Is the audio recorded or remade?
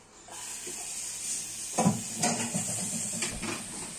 recorded